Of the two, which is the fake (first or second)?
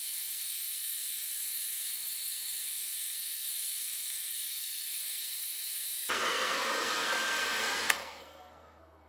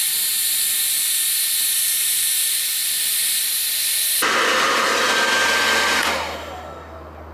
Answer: first